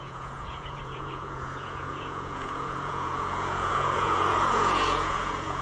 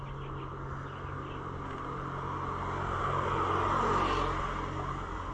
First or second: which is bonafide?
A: second